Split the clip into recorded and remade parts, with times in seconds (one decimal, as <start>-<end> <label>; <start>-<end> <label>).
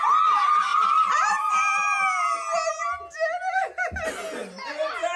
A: 0.0-5.2 recorded